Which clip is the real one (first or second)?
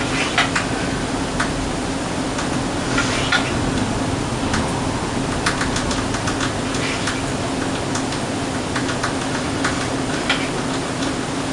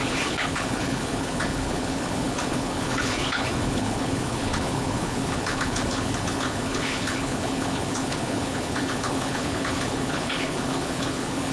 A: first